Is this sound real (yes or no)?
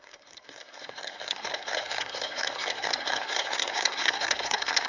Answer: no